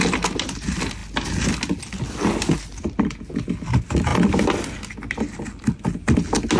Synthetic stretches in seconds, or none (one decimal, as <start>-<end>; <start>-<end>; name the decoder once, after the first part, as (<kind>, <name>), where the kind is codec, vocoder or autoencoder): none